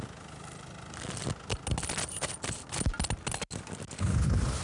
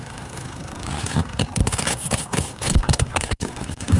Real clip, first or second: first